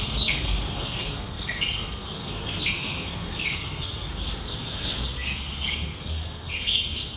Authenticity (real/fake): fake